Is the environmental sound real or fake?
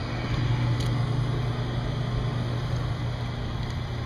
real